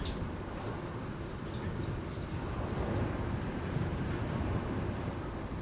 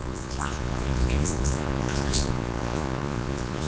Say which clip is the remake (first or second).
second